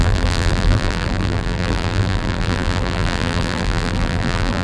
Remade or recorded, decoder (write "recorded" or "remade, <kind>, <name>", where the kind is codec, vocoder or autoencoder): remade, vocoder, BigVGAN v2